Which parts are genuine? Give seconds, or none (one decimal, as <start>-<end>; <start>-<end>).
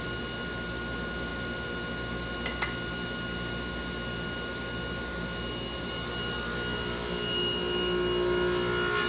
0.0-9.1